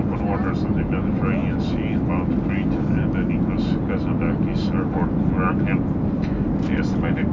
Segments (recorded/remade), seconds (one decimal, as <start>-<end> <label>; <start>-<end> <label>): 0.0-7.3 recorded